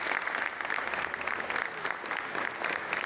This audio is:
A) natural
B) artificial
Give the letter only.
A